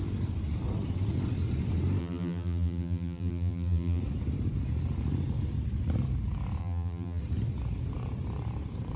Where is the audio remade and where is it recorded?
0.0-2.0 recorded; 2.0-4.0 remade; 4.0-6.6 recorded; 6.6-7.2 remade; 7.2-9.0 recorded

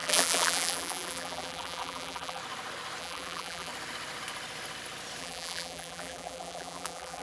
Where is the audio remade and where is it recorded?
0.0-2.4 remade; 2.4-3.0 recorded; 3.0-3.7 remade; 3.7-5.2 recorded; 5.2-7.2 remade

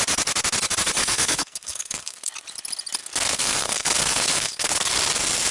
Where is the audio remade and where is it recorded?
0.0-1.0 recorded; 1.0-2.3 remade; 2.3-3.0 recorded; 3.0-4.9 remade; 4.9-5.5 recorded

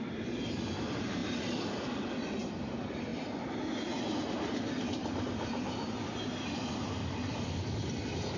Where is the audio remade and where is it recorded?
0.0-8.4 recorded

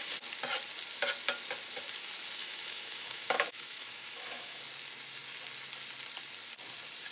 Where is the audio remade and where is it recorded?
0.0-2.4 recorded; 2.4-4.6 remade; 4.6-7.1 recorded